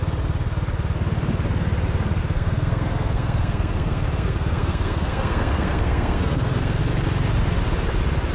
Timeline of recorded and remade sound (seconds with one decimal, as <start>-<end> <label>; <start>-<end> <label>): 0.0-2.2 recorded; 2.2-6.8 remade; 6.8-8.3 recorded